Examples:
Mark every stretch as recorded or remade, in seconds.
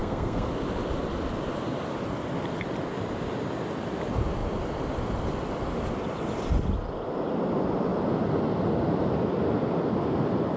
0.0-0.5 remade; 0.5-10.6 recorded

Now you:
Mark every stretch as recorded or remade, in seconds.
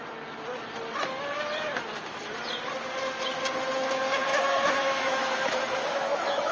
0.0-4.3 recorded; 4.3-6.5 remade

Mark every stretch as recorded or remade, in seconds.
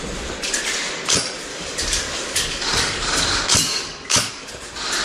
0.0-1.5 recorded; 1.5-4.5 remade; 4.5-5.0 recorded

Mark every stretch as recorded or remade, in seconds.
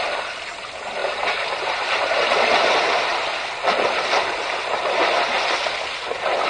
0.0-1.0 recorded; 1.0-2.8 remade; 2.8-6.5 recorded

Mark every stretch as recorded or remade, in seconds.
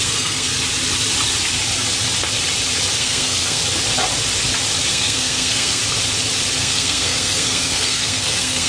0.0-0.5 remade; 0.5-3.0 recorded; 3.0-3.6 remade; 3.6-4.9 recorded; 4.9-5.8 remade; 5.8-6.6 recorded; 6.6-8.7 remade